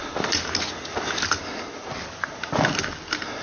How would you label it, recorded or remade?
recorded